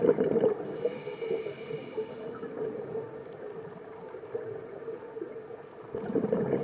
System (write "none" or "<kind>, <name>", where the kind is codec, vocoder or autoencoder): none